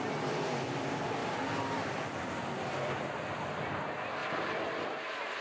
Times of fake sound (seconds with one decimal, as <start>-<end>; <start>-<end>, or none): 0.0-4.2